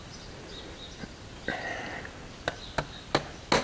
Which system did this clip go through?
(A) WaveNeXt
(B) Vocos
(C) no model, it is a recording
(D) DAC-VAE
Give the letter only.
C